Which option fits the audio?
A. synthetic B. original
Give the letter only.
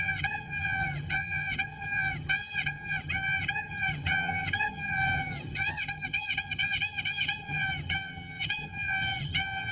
A